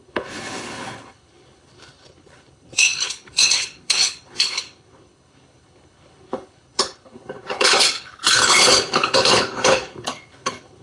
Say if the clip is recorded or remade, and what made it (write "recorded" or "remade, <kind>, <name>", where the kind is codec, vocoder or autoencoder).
remade, codec, HILCodec